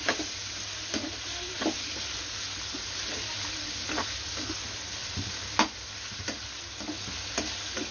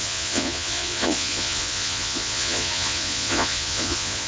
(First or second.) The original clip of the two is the first